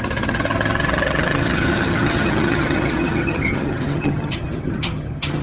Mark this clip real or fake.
fake